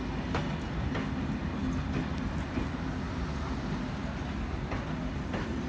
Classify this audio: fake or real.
real